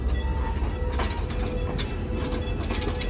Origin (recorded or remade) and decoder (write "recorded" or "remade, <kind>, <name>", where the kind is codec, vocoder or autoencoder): recorded